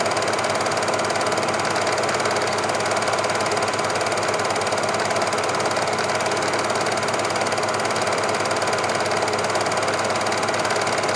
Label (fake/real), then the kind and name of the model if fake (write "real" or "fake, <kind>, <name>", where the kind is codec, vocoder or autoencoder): real